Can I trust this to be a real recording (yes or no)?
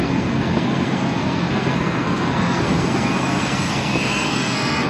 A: no